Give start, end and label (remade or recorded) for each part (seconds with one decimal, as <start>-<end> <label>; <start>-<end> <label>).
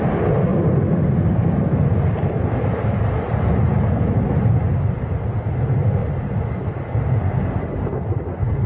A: 0.0-8.7 recorded